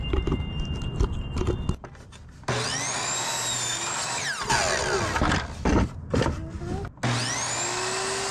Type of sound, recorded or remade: recorded